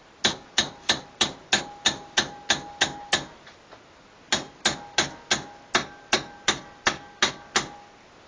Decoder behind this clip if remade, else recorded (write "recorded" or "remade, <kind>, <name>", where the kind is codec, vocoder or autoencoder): recorded